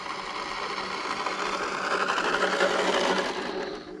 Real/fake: real